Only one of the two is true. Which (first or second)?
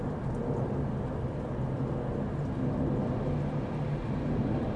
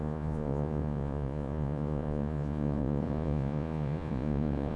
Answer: first